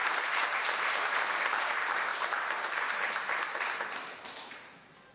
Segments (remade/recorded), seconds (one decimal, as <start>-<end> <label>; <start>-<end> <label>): 0.0-1.3 remade; 1.3-2.1 recorded; 2.1-5.1 remade